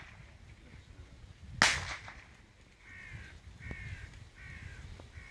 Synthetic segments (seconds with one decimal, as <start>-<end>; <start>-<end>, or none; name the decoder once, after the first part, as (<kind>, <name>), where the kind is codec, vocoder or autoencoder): none